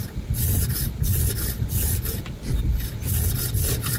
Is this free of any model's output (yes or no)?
yes